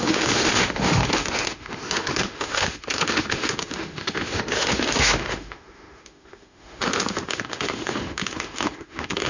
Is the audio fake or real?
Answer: fake